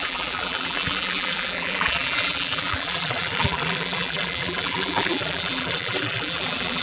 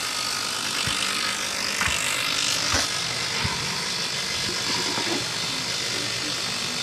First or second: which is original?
second